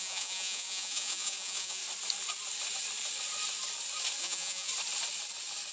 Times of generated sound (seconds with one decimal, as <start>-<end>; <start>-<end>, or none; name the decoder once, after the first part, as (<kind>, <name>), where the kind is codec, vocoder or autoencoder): 0.0-1.8 (vocoder, Vocos); 4.2-4.7